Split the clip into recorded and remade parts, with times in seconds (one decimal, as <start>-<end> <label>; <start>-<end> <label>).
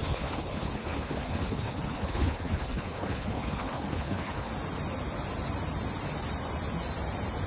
0.0-4.5 remade; 4.5-7.5 recorded